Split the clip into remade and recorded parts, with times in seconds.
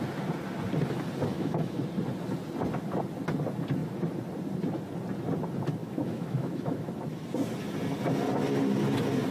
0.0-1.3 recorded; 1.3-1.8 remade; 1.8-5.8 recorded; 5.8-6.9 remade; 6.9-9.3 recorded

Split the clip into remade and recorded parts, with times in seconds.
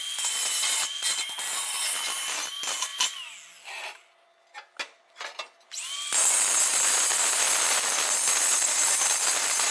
0.0-9.7 recorded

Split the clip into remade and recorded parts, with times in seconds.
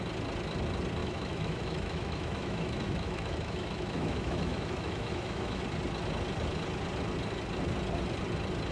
0.0-1.0 recorded; 1.0-5.6 remade; 5.6-8.7 recorded